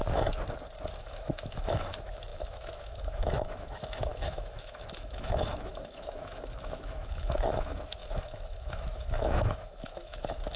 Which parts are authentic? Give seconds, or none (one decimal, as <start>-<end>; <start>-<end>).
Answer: 0.0-1.0